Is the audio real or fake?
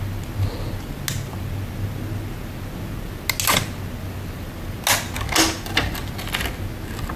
real